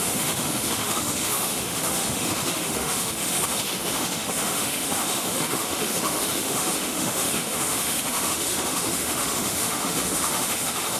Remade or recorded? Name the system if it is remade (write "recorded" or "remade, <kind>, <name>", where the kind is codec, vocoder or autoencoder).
remade, autoencoder, DAC-VAE